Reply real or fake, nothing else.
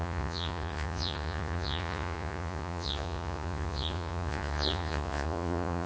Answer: fake